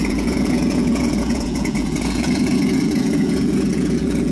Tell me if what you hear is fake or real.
fake